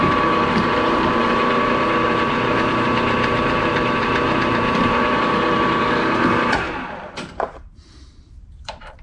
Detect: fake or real fake